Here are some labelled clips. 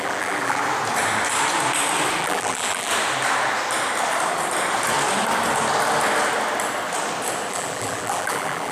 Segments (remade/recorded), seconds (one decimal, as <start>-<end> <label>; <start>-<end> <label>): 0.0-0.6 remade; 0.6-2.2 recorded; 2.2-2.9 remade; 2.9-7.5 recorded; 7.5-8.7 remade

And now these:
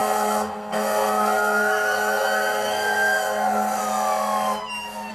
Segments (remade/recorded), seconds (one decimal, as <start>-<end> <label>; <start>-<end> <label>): 0.0-3.8 remade; 3.8-5.1 recorded

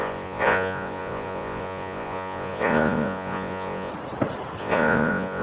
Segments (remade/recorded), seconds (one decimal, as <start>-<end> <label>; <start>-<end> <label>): 0.0-3.9 remade; 3.9-4.6 recorded; 4.6-5.4 remade